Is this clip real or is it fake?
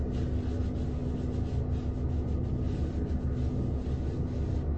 real